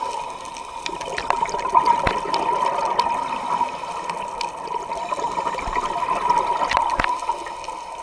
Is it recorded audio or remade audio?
recorded